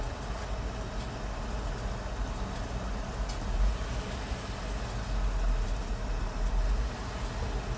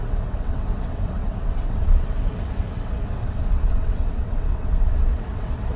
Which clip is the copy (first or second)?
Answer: second